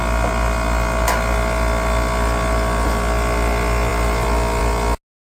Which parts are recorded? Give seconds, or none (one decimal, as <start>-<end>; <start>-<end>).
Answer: 0.0-5.2

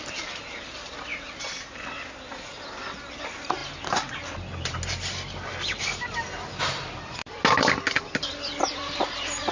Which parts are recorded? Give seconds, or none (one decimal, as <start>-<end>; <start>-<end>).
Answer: 0.0-9.5

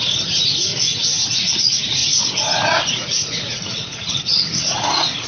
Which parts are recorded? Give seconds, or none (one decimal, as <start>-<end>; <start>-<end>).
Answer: 0.7-1.3

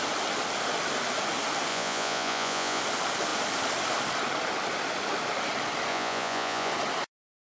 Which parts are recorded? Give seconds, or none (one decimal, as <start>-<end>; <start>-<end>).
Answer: 0.0-1.7; 2.8-5.9; 6.7-7.5